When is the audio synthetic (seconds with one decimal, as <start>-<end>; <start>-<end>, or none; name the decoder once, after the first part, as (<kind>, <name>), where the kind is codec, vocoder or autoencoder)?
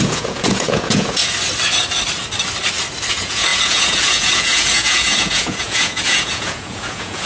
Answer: 0.0-1.2 (vocoder, Vocos); 3.1-7.3